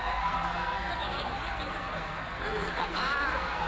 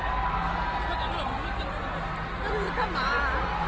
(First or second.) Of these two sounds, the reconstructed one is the first